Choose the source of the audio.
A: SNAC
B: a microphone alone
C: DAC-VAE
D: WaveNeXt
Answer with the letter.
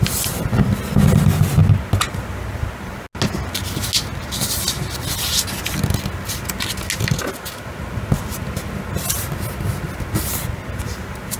B